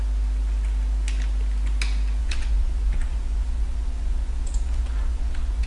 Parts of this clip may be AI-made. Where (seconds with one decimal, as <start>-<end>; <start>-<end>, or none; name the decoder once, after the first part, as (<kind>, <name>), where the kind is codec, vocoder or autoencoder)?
2.2-5.7 (vocoder, Vocos)